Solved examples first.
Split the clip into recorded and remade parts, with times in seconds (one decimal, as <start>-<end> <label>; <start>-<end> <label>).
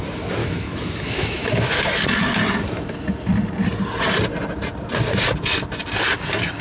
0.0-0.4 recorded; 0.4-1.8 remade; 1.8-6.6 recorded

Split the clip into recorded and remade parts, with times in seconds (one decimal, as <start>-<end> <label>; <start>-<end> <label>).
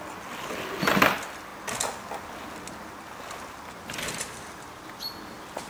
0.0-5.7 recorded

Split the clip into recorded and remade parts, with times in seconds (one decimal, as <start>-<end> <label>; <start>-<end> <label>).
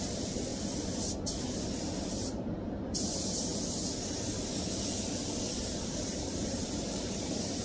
0.0-0.5 remade; 0.5-1.8 recorded; 1.8-3.5 remade; 3.5-5.6 recorded; 5.6-7.6 remade